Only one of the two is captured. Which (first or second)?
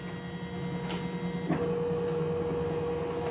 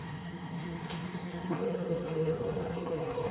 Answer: first